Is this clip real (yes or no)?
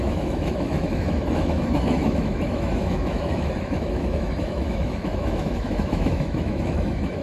no